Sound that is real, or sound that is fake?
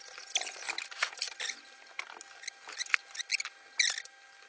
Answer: real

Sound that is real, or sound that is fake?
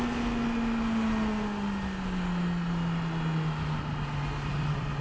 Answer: real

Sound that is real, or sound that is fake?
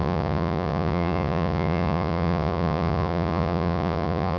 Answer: fake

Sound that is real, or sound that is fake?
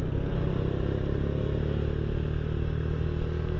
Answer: real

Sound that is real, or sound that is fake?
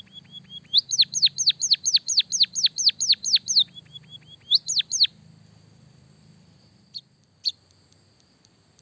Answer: real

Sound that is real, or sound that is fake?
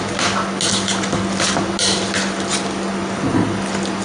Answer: real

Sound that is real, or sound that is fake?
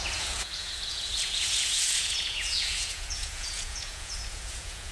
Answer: fake